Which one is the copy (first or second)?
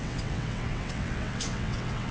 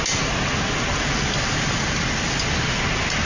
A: first